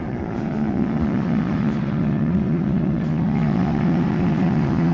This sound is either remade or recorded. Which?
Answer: remade